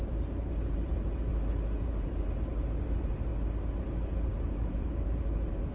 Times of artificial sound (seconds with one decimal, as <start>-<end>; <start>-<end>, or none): 0.0-1.3; 1.8-3.3; 3.8-5.7